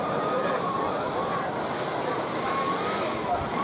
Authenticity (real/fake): real